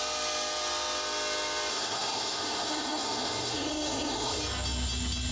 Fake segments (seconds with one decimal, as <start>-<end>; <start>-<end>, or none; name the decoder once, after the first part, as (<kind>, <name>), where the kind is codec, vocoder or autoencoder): 1.7-4.4 (codec, SNAC)